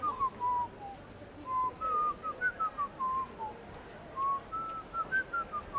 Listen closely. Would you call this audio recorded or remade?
recorded